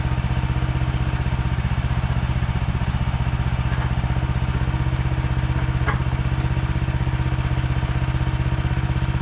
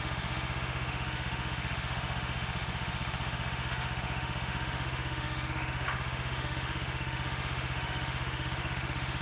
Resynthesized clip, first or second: second